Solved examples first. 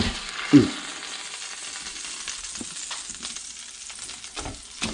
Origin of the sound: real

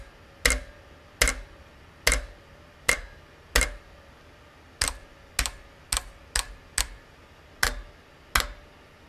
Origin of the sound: real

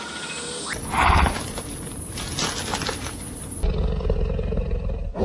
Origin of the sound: real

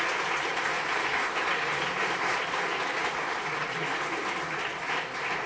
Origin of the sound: real